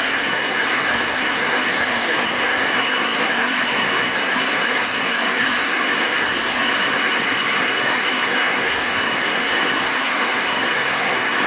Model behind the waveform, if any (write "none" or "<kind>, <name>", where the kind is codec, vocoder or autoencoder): codec, SNAC